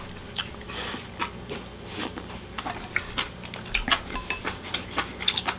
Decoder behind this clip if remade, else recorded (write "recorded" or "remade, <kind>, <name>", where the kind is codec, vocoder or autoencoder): recorded